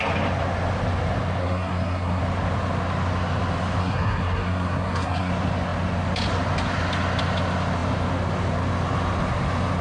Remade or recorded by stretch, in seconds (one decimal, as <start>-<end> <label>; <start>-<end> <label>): 0.0-1.4 recorded; 1.4-2.2 remade; 2.2-3.8 recorded; 3.8-5.3 remade; 5.3-9.8 recorded

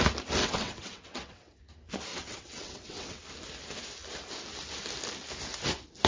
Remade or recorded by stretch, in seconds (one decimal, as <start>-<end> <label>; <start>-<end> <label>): 0.0-0.4 recorded; 0.4-1.6 remade; 1.6-2.1 recorded; 2.1-3.2 remade; 3.2-6.1 recorded